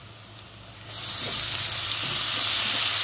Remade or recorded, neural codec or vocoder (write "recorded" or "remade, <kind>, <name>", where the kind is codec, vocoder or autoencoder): recorded